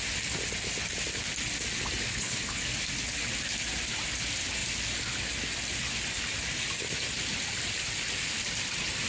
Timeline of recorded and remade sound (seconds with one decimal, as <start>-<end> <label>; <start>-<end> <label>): 0.0-2.1 recorded; 2.1-2.6 remade; 2.6-9.1 recorded